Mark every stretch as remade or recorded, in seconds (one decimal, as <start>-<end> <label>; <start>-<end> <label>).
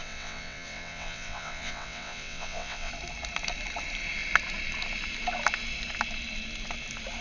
0.0-2.9 remade; 2.9-7.2 recorded